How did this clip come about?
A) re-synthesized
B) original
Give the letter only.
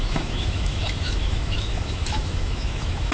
A